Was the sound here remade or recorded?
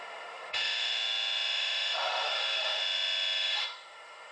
remade